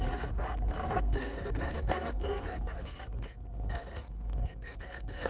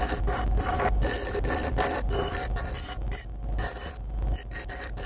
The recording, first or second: second